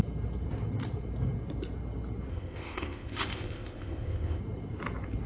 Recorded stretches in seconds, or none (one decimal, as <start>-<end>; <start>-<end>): 0.0-2.3; 4.4-5.3